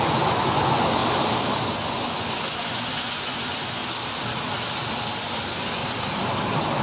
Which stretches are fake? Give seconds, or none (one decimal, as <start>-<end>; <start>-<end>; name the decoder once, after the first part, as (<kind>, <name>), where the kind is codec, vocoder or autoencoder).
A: 0.0-1.0 (vocoder, Vocos); 1.6-3.8; 5.2-5.8